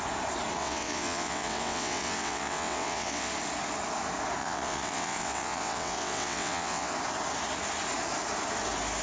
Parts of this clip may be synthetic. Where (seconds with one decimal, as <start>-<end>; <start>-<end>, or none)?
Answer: 0.6-3.3; 4.4-6.9